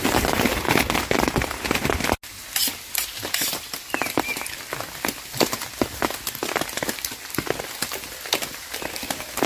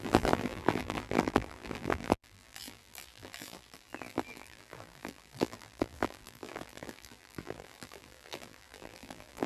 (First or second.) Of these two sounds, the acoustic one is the first